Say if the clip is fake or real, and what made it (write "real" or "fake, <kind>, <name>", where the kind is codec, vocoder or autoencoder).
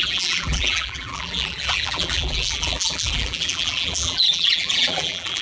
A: fake, vocoder, BigVGAN v2